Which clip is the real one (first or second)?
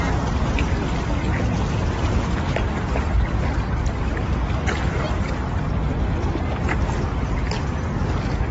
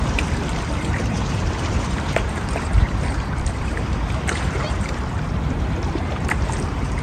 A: first